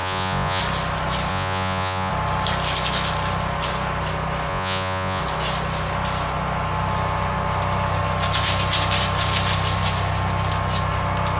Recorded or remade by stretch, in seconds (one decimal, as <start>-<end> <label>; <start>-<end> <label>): 0.0-0.6 remade; 0.6-1.3 recorded; 1.3-2.1 remade; 2.1-4.5 recorded; 4.5-5.2 remade; 5.2-11.4 recorded